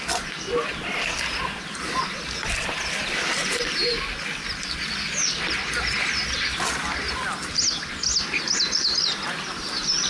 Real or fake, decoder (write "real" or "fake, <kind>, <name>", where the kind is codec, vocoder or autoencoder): real